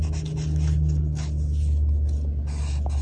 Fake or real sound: real